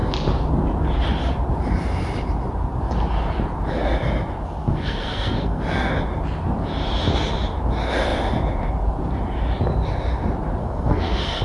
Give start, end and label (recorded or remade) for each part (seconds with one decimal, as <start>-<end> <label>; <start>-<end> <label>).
0.0-4.6 recorded; 4.6-5.9 remade; 5.9-10.6 recorded; 10.6-11.4 remade